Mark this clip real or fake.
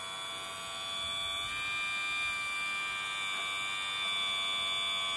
real